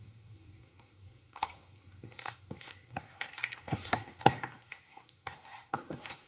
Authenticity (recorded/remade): remade